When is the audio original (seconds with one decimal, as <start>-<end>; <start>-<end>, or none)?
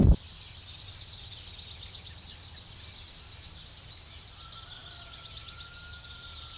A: 0.0-6.6